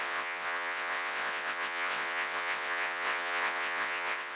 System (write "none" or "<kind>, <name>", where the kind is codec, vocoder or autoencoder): vocoder, WaveNeXt